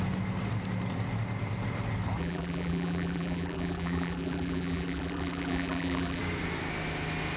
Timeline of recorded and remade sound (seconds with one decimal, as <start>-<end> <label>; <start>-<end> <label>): 0.0-2.2 recorded; 2.2-6.2 remade; 6.2-7.4 recorded